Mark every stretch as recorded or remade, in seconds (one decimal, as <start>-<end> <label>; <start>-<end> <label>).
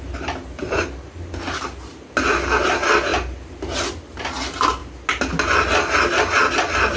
0.0-7.0 recorded